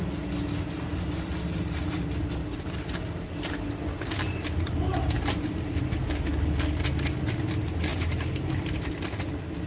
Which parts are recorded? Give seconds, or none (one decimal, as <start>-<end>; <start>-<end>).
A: 0.0-2.4; 5.8-7.9; 9.2-9.7